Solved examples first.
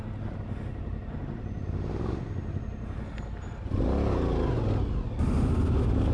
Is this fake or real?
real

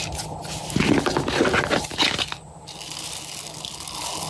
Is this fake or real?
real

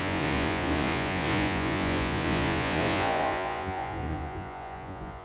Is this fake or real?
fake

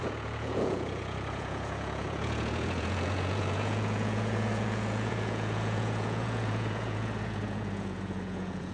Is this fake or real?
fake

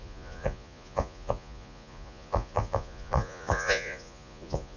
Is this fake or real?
fake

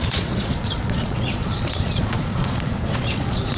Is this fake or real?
fake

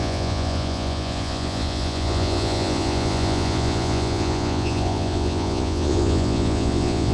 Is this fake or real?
fake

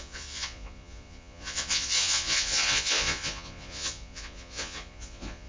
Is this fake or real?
fake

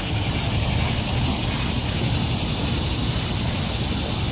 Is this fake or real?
real